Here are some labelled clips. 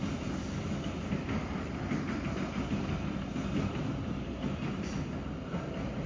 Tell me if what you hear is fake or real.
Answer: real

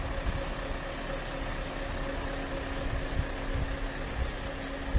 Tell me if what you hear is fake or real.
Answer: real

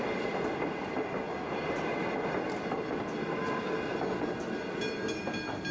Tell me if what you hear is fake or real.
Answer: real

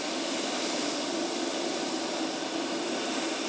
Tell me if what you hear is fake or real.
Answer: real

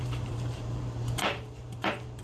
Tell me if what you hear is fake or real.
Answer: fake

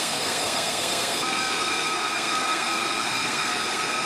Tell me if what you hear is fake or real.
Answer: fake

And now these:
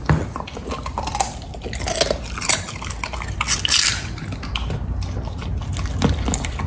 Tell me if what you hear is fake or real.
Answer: real